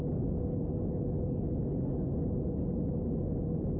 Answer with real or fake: real